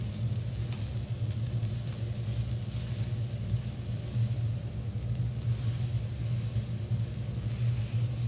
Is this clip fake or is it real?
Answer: real